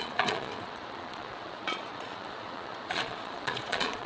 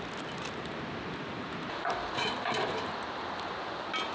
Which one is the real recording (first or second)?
second